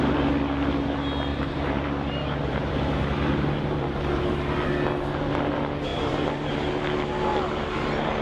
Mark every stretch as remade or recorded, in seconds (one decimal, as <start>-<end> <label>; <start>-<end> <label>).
0.0-1.3 recorded; 1.3-4.2 remade; 4.2-5.9 recorded; 5.9-6.7 remade; 6.7-7.3 recorded; 7.3-8.2 remade